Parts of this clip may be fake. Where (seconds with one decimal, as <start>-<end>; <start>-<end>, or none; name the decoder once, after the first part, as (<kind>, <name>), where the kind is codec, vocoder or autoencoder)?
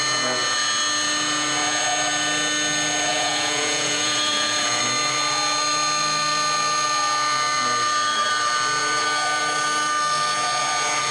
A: 3.1-4.8 (vocoder, Vocos)